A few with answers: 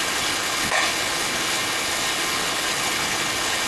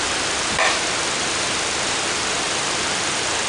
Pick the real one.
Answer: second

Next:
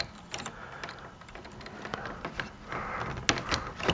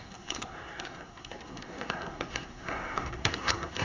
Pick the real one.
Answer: first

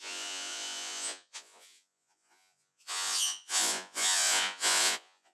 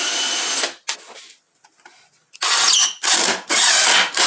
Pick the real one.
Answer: second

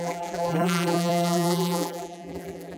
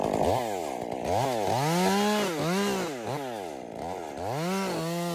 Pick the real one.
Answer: second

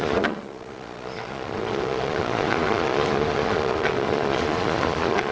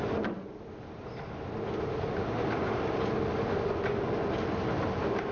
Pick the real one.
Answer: second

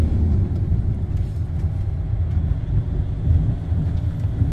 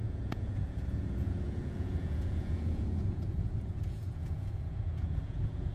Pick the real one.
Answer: first